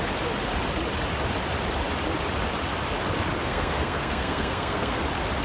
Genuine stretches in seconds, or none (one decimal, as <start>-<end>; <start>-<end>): 0.0-3.4; 5.0-5.4